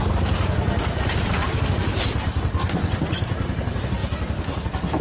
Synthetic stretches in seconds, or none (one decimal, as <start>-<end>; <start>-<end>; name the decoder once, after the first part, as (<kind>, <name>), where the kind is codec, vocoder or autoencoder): none